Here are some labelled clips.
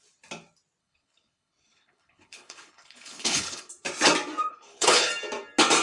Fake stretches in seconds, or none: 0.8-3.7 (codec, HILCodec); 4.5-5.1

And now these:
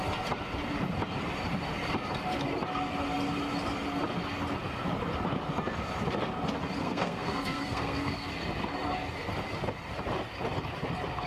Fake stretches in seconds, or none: 6.8-8.3 (codec, SNAC)

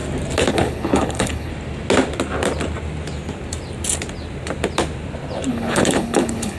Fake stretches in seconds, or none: 0.5-1.5 (codec, HILCodec); 5.5-6.6

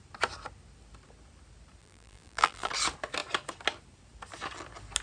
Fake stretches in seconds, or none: 1.8-2.7 (vocoder, BigVGAN v2)

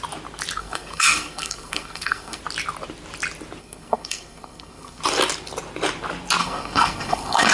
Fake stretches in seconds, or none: 0.6-2.4 (codec, SNAC); 3.6-5.0; 6.4-7.5

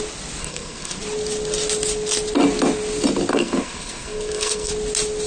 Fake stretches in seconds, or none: 0.4-1.0 (codec, SNAC); 3.3-4.7